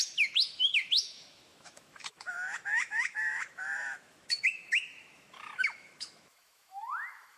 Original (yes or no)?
no